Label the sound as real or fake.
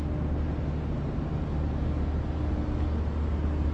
real